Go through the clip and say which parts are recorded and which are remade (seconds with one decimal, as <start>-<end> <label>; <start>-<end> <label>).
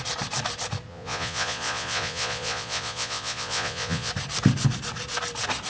0.0-0.9 recorded; 0.9-4.1 remade; 4.1-5.7 recorded